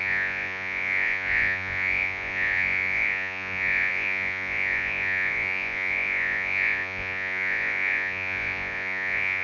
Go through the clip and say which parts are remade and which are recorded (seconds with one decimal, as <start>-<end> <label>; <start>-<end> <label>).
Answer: 0.0-9.4 remade